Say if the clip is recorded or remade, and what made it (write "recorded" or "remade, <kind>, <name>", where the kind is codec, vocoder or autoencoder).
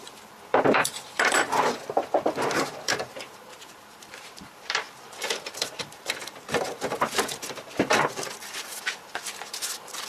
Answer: remade, vocoder, BigVGAN v2